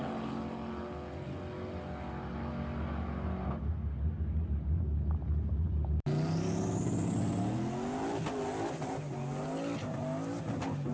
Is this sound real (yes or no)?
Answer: yes